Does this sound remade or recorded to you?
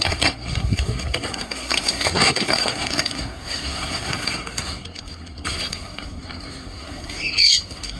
remade